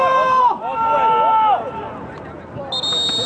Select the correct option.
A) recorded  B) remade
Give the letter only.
A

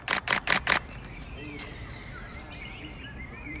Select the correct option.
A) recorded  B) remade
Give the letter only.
A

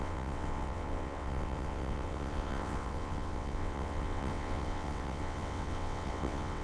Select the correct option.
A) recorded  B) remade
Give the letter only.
B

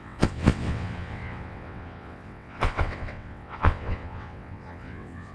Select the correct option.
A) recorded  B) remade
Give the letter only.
B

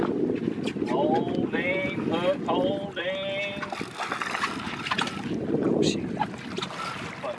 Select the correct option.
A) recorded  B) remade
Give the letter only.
A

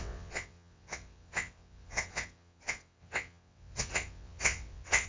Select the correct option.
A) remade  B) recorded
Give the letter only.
A